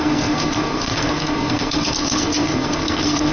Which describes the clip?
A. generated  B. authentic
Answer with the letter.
A